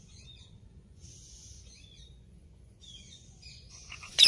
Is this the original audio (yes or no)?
no